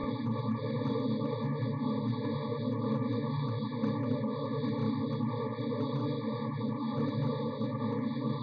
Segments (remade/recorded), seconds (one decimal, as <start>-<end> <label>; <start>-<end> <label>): 0.0-8.4 recorded